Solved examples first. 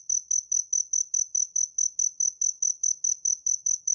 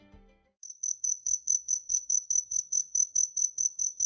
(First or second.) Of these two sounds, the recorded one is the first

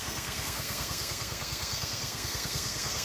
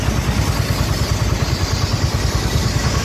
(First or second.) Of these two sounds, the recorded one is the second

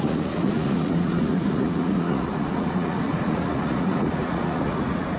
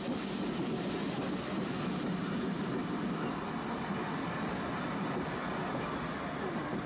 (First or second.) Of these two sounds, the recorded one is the second